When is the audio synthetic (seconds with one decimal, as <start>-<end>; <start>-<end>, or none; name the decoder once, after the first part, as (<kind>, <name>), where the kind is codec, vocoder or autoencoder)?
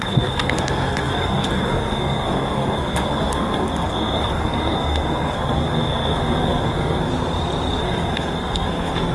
0.0-7.1 (codec, SNAC); 7.8-9.1